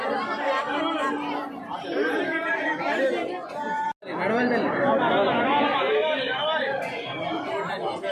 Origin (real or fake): real